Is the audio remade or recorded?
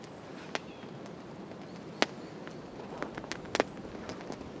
recorded